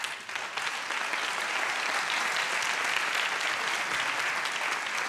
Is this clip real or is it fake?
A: real